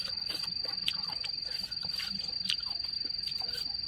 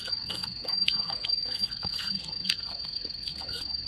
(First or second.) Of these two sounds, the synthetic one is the second